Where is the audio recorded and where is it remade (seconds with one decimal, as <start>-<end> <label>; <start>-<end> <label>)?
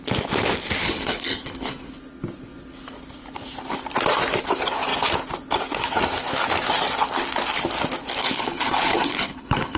0.0-0.8 recorded; 0.8-1.9 remade; 1.9-8.2 recorded; 8.2-9.8 remade